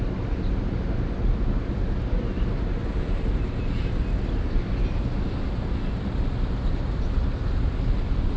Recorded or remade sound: recorded